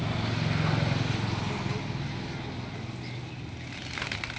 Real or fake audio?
real